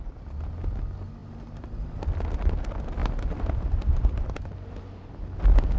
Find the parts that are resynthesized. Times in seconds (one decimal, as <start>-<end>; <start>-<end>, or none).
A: 1.2-2.1; 3.0-4.8